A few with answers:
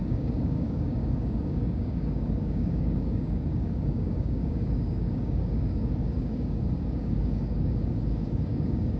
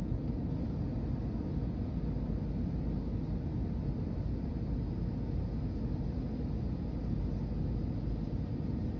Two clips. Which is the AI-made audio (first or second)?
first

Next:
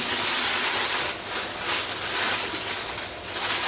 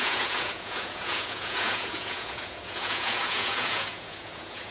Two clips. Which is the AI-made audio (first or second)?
second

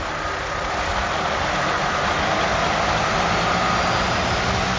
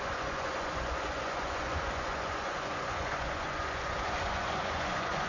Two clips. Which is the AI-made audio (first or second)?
second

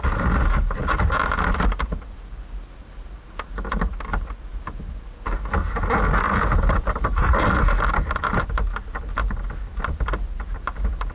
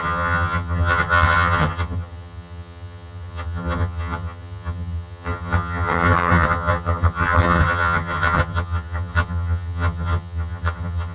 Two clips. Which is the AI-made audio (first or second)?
second